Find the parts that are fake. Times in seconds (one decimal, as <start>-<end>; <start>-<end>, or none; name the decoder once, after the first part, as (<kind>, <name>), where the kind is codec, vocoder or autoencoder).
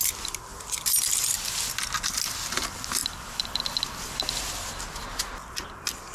3.0-4.8 (vocoder, BigVGAN v2)